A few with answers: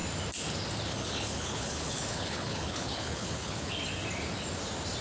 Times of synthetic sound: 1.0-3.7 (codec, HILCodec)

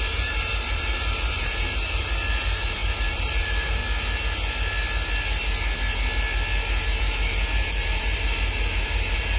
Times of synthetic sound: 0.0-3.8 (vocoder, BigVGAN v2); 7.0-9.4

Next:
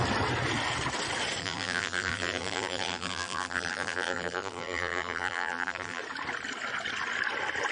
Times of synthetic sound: 1.4-6.0 (vocoder, BigVGAN v2)